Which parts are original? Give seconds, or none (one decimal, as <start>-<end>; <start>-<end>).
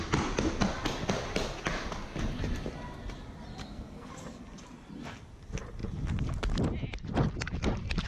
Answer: 0.0-3.6; 4.1-8.1